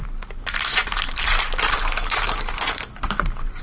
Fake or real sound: fake